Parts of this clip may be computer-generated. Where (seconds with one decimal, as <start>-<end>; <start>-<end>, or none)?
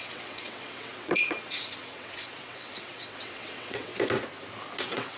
0.0-3.9; 4.8-5.2